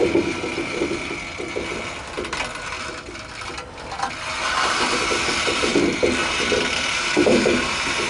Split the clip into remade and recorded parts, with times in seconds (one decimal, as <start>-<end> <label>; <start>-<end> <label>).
0.0-6.2 recorded; 6.2-8.1 remade